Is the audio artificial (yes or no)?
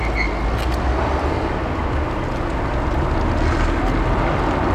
no